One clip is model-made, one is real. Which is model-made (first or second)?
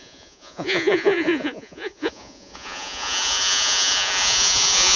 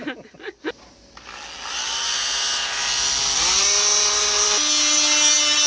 first